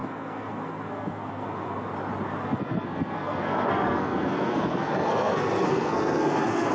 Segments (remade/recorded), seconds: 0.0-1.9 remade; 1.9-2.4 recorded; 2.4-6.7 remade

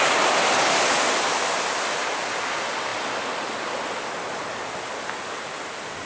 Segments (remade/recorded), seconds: 0.0-6.1 recorded